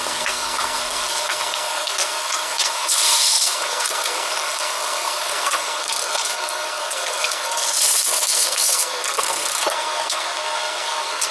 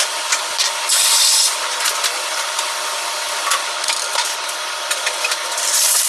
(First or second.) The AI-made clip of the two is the first